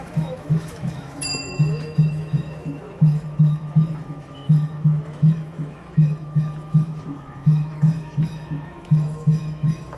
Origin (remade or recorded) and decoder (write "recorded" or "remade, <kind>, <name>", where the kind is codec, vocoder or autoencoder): remade, autoencoder, DAC-VAE